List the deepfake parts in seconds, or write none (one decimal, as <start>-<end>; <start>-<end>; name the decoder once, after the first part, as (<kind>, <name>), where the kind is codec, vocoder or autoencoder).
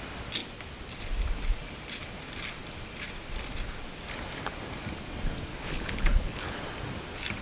5.5-6.6 (codec, HILCodec)